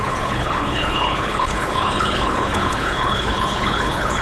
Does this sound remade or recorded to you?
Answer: remade